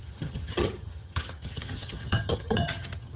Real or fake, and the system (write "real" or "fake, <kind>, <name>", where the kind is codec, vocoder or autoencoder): fake, vocoder, HiFi-GAN